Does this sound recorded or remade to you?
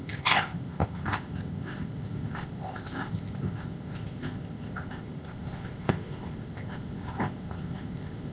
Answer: remade